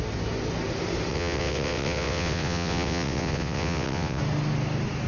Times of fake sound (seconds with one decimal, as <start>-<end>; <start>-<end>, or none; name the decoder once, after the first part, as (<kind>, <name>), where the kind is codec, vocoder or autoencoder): 1.1-4.2 (vocoder, WaveNeXt)